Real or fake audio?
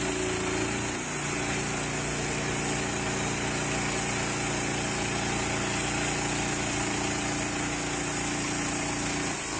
real